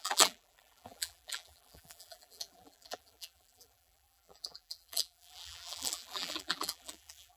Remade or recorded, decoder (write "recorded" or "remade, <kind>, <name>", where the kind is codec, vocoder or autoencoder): remade, vocoder, BigVGAN v2